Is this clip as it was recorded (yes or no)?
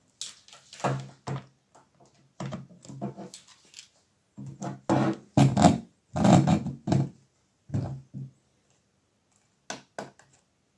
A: yes